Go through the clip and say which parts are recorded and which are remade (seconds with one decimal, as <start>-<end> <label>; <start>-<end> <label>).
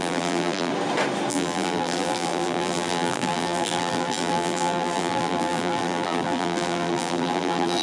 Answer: 0.0-0.7 remade; 0.7-1.3 recorded; 1.3-7.8 remade